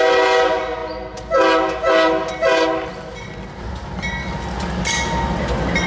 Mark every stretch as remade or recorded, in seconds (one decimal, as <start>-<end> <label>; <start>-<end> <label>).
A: 0.0-5.9 recorded